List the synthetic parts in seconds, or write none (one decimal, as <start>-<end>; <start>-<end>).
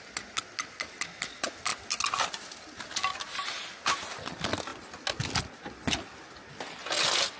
none